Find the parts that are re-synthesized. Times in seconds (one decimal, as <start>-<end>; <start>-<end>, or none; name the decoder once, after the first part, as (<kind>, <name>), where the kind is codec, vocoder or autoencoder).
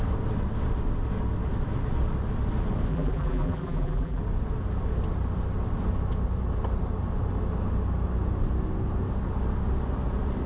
2.9-4.2 (vocoder, BigVGAN v2)